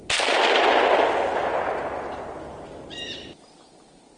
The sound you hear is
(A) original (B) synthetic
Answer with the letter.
A